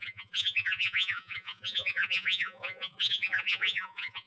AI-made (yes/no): yes